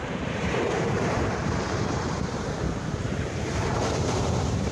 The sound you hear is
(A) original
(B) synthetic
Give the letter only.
B